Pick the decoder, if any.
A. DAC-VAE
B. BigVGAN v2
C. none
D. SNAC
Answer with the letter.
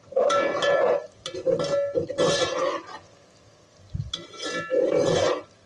C